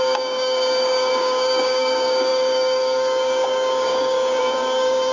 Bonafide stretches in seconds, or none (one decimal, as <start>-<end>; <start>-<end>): none